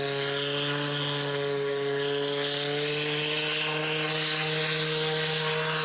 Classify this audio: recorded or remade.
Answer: recorded